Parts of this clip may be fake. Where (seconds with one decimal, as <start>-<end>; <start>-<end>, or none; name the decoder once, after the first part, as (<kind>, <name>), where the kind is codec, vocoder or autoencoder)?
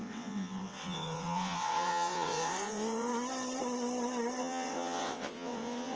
0.0-3.1 (vocoder, WaveNeXt); 4.4-6.0